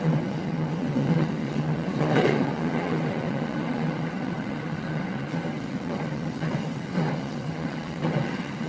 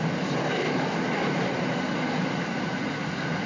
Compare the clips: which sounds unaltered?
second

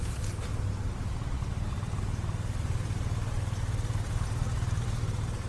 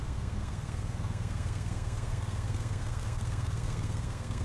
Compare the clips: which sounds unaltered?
first